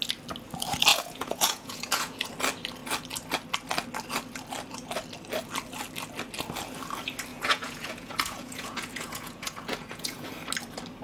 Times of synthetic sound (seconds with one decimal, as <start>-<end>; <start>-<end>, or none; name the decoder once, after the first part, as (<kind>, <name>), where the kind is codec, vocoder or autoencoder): 0.9-2.3 (vocoder, Vocos); 7.3-10.3